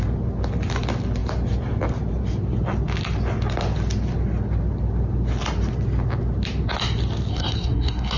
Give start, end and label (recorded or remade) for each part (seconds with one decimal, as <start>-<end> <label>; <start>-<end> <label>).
0.0-7.3 recorded; 7.3-8.2 remade